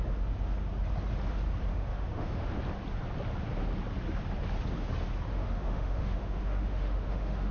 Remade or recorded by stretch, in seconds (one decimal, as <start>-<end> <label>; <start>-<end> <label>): 0.0-1.7 recorded; 1.7-2.5 remade; 2.5-5.3 recorded; 5.3-7.5 remade